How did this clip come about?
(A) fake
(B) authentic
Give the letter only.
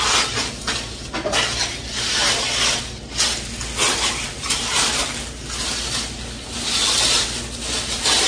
B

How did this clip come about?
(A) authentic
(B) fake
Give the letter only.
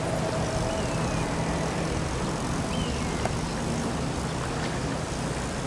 A